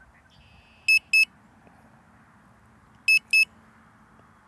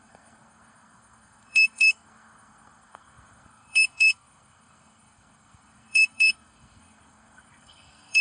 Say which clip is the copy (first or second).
second